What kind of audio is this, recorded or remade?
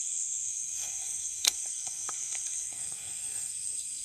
remade